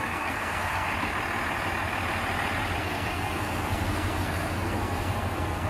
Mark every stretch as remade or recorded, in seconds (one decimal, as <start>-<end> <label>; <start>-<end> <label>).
0.0-0.9 remade; 0.9-2.8 recorded; 2.8-5.7 remade